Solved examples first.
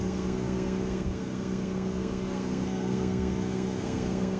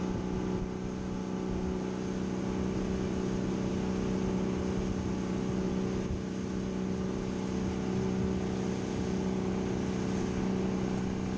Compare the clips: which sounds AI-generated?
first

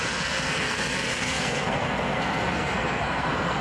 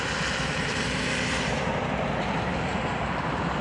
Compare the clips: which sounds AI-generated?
first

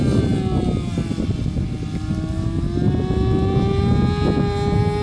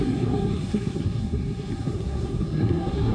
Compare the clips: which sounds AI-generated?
second